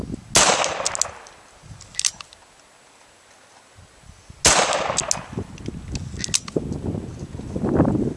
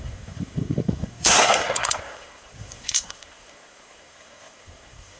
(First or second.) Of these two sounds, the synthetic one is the second